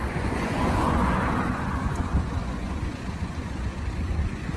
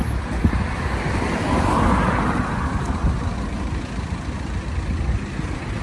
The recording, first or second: second